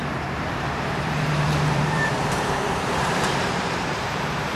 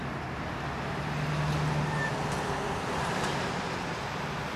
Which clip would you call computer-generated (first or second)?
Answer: first